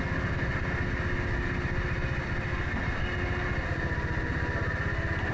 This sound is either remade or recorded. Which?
recorded